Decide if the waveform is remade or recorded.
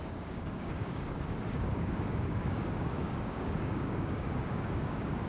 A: remade